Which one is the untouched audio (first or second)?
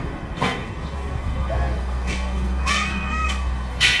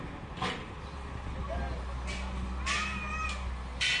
second